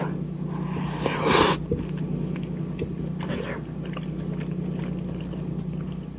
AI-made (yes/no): no